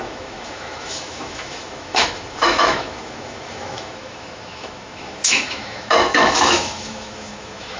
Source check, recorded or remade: remade